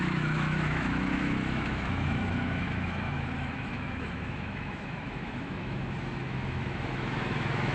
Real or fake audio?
fake